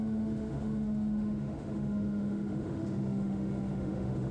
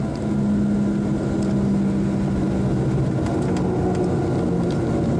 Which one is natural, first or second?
second